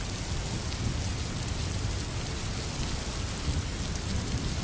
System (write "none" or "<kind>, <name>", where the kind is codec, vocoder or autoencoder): none